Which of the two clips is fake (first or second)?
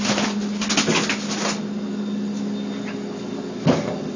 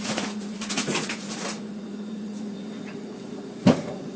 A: second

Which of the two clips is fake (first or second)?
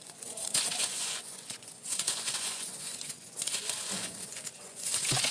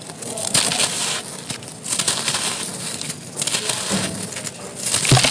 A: first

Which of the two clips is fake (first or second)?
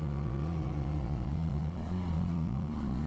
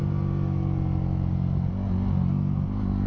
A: first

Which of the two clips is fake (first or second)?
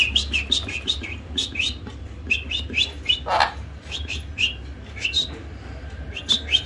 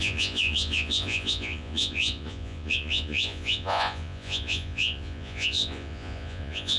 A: second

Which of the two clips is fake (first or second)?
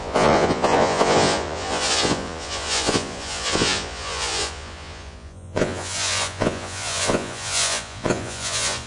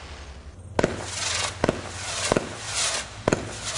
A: first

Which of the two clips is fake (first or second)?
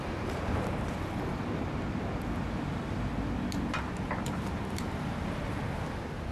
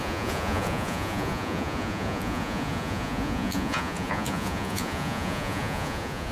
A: second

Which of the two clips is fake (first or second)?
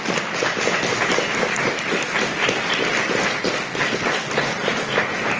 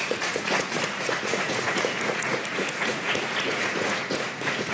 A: second